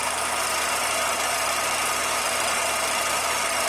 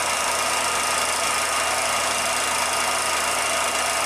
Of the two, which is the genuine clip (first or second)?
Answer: second